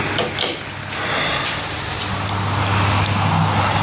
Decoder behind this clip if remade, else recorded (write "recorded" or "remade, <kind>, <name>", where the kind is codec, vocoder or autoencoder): recorded